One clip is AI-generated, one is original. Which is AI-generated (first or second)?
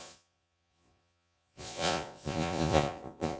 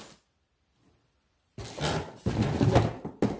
first